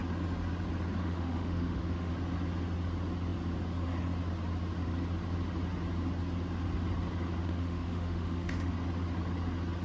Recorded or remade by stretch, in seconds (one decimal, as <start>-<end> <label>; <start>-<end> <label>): 0.0-1.0 recorded; 1.0-2.1 remade; 2.1-7.4 recorded; 7.4-8.7 remade; 8.7-9.8 recorded